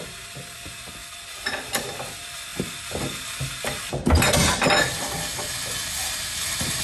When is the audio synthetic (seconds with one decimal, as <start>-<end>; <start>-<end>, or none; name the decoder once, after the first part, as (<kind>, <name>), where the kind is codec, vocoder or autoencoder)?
none